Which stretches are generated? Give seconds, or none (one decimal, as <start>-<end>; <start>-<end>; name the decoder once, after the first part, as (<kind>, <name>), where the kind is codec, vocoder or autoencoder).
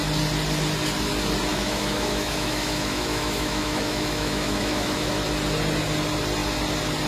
1.5-5.1 (autoencoder, DAC-VAE)